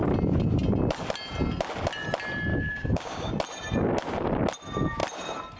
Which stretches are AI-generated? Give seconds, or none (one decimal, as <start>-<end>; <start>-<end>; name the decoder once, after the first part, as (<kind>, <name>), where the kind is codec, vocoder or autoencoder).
2.5-3.3 (codec, DAC)